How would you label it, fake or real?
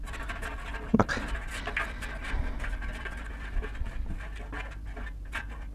real